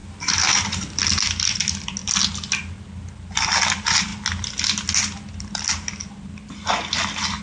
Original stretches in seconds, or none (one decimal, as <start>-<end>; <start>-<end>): 0.0-7.4